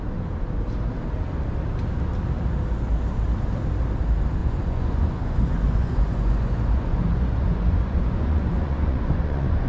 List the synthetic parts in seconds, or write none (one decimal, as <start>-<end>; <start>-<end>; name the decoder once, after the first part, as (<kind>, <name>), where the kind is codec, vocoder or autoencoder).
4.4-9.7 (vocoder, Vocos)